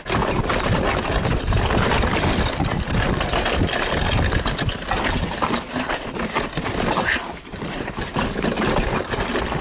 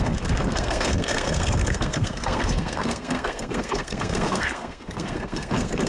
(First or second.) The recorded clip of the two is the first